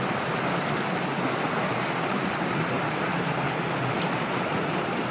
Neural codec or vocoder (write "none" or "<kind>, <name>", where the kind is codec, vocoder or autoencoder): none